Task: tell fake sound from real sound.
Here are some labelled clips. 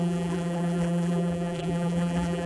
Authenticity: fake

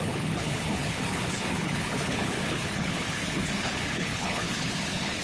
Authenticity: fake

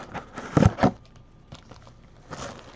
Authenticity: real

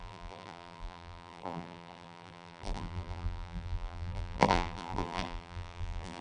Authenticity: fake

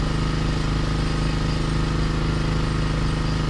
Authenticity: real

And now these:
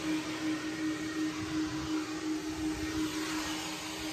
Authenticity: real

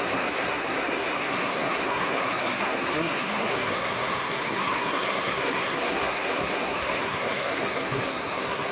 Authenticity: fake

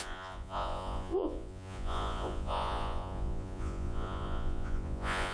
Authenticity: fake